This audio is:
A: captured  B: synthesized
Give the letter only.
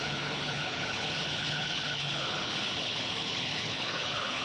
B